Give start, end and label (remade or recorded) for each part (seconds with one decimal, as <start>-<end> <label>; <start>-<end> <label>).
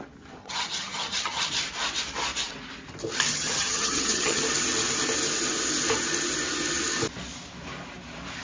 0.0-0.4 recorded; 0.4-1.5 remade; 1.5-3.3 recorded; 3.3-4.4 remade; 4.4-8.4 recorded